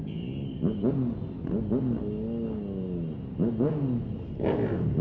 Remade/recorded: recorded